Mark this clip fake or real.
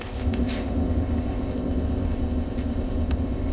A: fake